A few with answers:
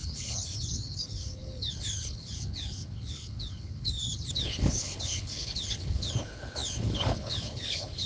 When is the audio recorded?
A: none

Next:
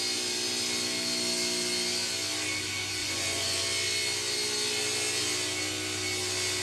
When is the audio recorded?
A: 0.0-3.0; 3.6-6.6

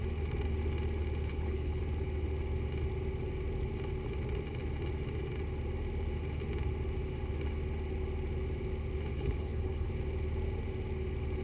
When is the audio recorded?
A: 0.0-1.3; 1.8-9.1; 9.9-11.4

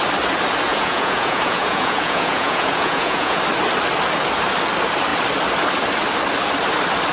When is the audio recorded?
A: 0.0-0.7; 3.4-7.1

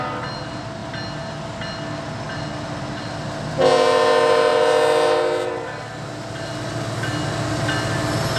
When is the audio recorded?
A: 0.0-8.4

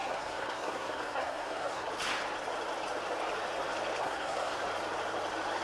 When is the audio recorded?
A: 1.9-4.0; 4.6-5.6